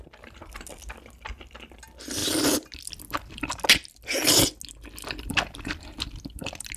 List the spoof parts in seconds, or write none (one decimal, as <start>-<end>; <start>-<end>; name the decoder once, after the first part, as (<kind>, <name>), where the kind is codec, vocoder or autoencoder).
none